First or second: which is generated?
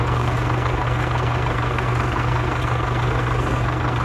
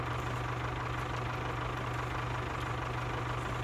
first